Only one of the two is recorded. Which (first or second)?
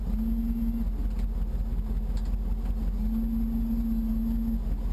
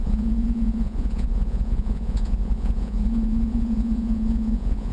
first